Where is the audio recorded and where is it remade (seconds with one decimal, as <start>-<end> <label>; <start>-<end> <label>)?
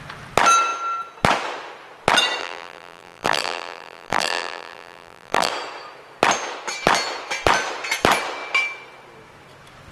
0.0-2.4 recorded; 2.4-5.5 remade; 5.5-9.9 recorded